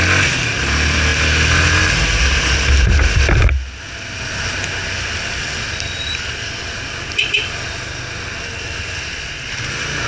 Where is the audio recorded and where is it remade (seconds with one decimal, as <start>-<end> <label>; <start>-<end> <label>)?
0.0-10.1 recorded